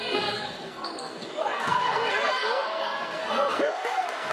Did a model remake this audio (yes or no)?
yes